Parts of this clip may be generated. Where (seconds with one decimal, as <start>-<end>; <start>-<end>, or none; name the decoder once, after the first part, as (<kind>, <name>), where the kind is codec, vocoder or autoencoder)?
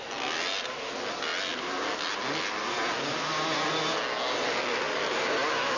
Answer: none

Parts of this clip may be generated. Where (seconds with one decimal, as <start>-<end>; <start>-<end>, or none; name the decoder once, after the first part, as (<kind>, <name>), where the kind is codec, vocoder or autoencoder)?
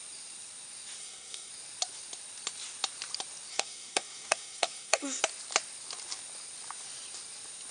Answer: 1.0-1.5 (codec, SNAC); 3.5-5.2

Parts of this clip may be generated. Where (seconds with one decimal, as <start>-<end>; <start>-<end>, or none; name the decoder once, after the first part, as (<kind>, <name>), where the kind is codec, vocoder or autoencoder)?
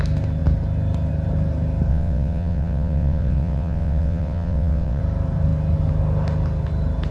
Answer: 1.9-5.0 (vocoder, WaveNeXt)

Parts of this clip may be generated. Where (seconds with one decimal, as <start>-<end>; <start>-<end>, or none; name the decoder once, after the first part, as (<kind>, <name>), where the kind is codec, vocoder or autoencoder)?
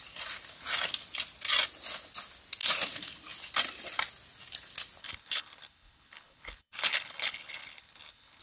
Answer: 5.0-8.4 (codec, HILCodec)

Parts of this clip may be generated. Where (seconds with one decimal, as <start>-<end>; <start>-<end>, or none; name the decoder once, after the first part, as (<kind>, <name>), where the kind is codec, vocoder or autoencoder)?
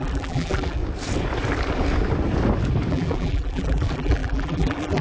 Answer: 0.0-0.8 (vocoder, BigVGAN v2); 2.9-5.0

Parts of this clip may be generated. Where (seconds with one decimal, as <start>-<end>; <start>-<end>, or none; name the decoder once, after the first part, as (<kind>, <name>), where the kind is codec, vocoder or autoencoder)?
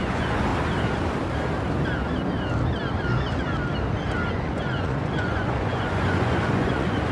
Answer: 0.0-0.5 (vocoder, Vocos); 4.3-7.1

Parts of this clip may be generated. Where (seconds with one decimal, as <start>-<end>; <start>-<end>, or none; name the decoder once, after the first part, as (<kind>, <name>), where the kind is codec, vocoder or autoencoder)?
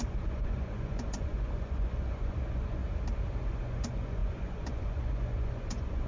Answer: 0.0-2.8 (vocoder, Vocos); 3.5-6.1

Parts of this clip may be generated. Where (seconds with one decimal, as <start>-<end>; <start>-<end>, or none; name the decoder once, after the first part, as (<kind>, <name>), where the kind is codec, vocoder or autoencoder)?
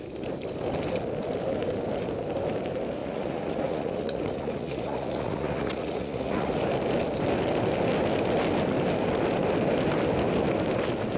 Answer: 3.0-6.5 (vocoder, Vocos)